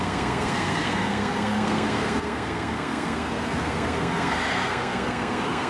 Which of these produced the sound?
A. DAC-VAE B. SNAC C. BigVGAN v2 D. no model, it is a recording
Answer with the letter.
B